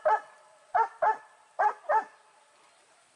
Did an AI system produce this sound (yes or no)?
no